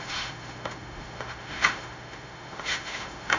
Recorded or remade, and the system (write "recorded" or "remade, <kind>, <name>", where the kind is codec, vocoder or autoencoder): remade, autoencoder, DAC-VAE